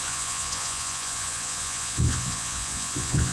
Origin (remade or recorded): remade